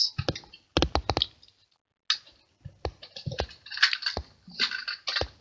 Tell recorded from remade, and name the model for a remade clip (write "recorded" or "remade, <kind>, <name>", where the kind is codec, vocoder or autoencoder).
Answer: recorded